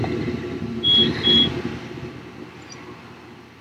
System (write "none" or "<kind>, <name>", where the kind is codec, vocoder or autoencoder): none